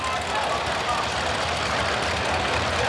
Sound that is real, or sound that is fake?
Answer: real